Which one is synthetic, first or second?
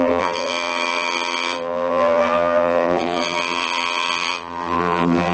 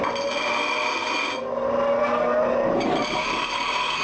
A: first